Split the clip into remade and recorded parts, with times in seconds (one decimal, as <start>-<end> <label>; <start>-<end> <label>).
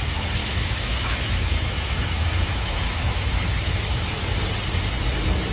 0.0-0.4 recorded; 0.4-3.7 remade; 3.7-5.5 recorded